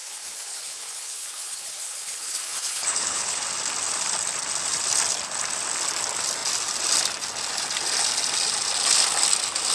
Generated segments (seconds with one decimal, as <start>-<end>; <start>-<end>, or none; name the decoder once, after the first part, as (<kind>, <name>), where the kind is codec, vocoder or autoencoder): 0.0-3.4 (codec, HILCodec)